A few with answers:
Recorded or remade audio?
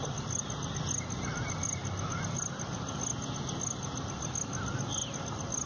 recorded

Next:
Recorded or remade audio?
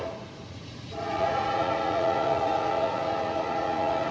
remade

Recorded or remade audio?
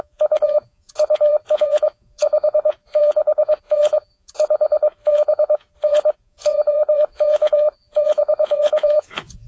remade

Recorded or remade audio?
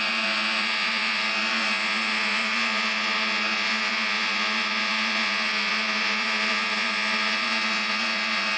remade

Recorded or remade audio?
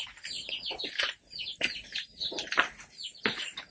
recorded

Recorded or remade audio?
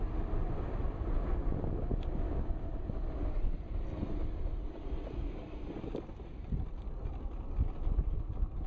recorded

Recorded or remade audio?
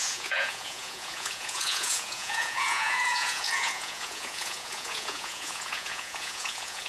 remade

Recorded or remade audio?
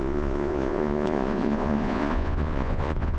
remade